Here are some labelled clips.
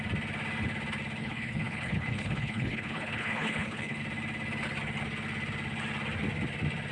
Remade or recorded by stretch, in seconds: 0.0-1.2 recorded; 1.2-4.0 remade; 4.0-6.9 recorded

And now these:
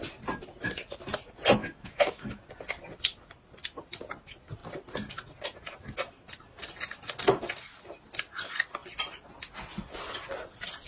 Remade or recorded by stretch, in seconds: 0.0-1.6 recorded; 1.6-2.4 remade; 2.4-10.9 recorded

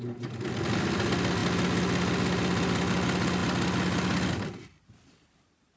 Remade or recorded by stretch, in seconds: 0.0-5.8 recorded

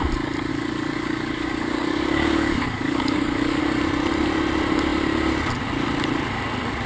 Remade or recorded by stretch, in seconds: 0.0-0.5 recorded; 0.5-3.6 remade; 3.6-6.9 recorded

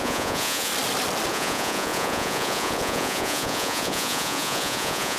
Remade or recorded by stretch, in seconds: 0.0-0.7 remade; 0.7-1.3 recorded; 1.3-5.2 remade

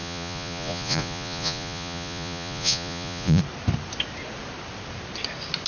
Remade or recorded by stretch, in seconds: 0.0-3.4 remade; 3.4-5.7 recorded

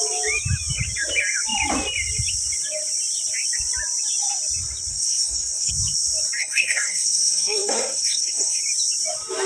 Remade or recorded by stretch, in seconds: 0.0-4.9 recorded; 4.9-5.7 remade; 5.7-6.4 recorded; 6.4-8.6 remade; 8.6-9.5 recorded

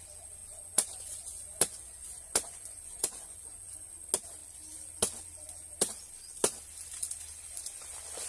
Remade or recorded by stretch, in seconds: 0.0-0.4 recorded; 0.4-3.9 remade; 3.9-8.3 recorded